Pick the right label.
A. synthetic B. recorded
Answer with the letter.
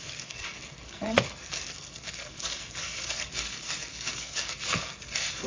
A